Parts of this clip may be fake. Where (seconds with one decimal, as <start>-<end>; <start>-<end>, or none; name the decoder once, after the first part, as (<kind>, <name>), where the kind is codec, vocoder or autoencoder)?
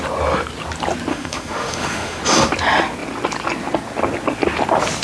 1.1-2.2 (autoencoder, DAC-VAE)